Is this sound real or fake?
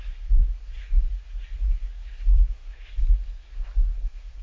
fake